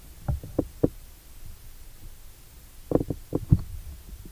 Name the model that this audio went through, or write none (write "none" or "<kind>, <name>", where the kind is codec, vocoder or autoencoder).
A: none